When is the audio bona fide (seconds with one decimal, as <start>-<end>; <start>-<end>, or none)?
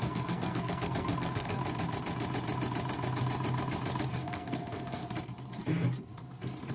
1.6-4.1; 5.0-6.7